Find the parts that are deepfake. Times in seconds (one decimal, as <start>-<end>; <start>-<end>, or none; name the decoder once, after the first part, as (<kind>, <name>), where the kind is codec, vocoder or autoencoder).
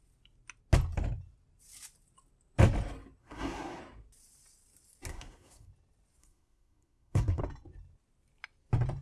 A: 3.2-3.8 (codec, SNAC); 5.1-5.7; 6.2-7.4